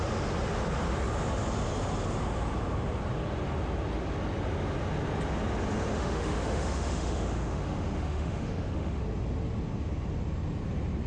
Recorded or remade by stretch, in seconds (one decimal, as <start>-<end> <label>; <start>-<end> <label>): 0.0-5.9 recorded; 5.9-9.0 remade; 9.0-11.1 recorded